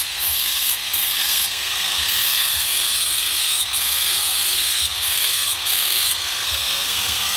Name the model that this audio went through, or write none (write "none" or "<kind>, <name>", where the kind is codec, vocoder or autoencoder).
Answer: codec, SNAC